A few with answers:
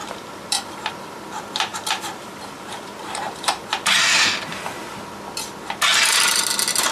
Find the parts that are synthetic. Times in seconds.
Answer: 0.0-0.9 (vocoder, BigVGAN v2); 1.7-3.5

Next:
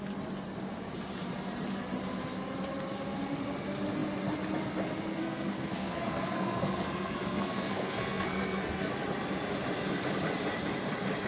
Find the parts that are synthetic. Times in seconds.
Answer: 5.1-8.9 (codec, SNAC)

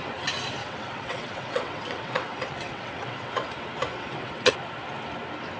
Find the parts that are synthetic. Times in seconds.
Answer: 0.6-3.5 (vocoder, WaveNeXt); 3.9-4.5

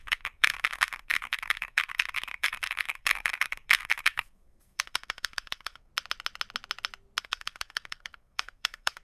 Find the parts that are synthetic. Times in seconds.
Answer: 0.0-5.9 (codec, SNAC); 7.2-9.0

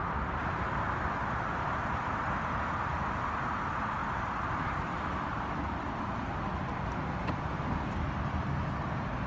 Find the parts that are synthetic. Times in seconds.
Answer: 0.0-2.1 (vocoder, BigVGAN v2); 4.0-6.0

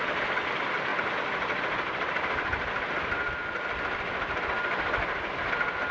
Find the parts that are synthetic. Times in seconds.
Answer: 0.9-4.4 (vocoder, BigVGAN v2)